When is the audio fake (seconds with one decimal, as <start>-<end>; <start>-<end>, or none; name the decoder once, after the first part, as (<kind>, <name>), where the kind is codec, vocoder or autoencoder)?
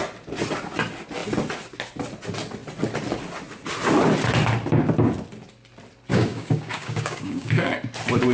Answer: 6.1-7.7 (codec, DAC)